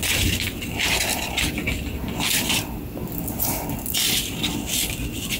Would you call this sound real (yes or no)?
yes